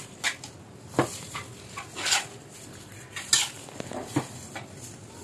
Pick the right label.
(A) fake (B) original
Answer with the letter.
B